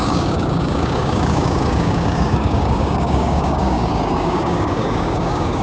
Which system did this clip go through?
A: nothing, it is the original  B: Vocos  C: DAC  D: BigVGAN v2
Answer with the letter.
C